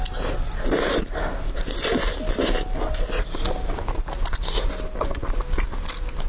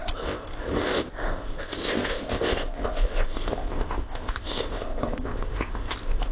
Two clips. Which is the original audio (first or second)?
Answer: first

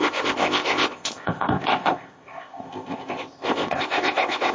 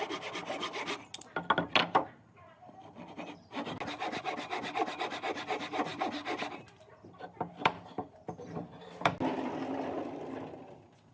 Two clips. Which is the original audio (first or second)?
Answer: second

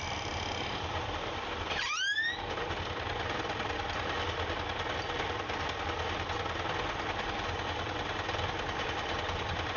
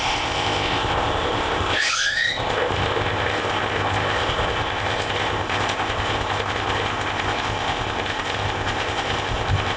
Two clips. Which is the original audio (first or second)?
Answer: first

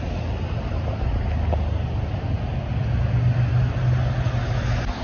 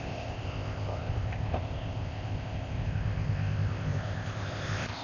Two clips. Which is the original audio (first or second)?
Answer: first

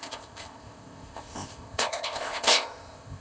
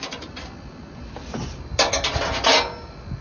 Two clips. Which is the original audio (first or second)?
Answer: second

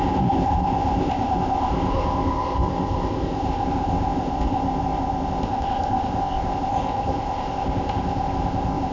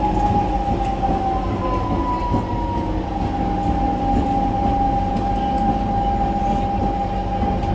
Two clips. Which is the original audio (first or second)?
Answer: second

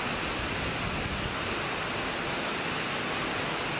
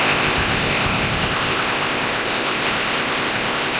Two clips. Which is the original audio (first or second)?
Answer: first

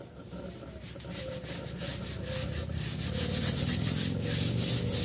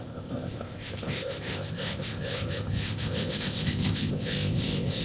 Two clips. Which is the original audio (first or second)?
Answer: first